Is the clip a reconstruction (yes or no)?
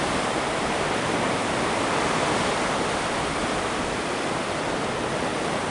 no